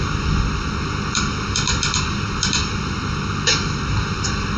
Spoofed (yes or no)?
no